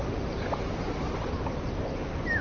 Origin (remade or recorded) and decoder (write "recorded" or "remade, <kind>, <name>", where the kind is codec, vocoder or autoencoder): remade, vocoder, BigVGAN v2